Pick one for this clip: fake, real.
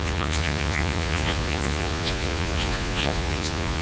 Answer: fake